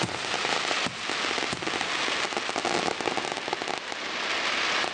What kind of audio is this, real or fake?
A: real